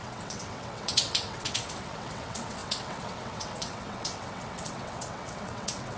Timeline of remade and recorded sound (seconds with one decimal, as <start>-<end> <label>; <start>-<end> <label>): 0.0-6.0 remade